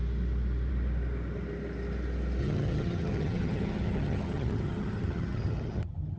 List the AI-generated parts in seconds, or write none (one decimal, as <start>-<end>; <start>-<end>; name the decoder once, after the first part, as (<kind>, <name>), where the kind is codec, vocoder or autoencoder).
2.4-6.2 (vocoder, HiFi-GAN)